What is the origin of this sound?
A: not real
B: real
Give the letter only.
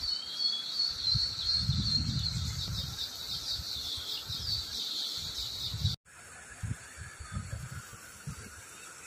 B